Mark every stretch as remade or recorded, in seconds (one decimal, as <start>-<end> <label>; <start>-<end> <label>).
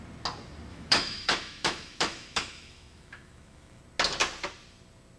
0.0-0.7 recorded; 0.7-3.8 remade; 3.8-5.2 recorded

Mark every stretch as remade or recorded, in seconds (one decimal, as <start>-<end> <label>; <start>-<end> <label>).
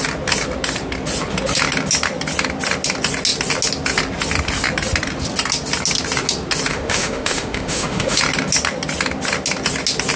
0.0-6.7 recorded; 6.7-8.2 remade; 8.2-10.2 recorded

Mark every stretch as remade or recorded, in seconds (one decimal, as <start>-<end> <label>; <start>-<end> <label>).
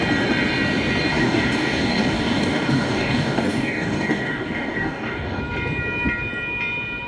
0.0-1.1 recorded; 1.1-5.4 remade; 5.4-7.1 recorded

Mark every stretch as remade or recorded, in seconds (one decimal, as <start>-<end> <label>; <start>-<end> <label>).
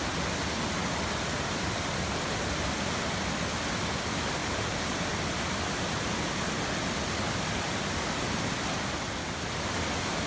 0.0-4.4 recorded; 4.4-5.1 remade; 5.1-10.3 recorded